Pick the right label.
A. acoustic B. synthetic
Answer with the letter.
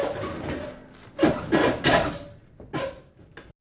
A